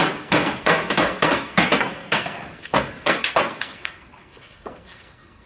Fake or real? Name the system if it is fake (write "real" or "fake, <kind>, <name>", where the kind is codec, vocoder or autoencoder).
fake, codec, SNAC